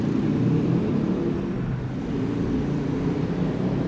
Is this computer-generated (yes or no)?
no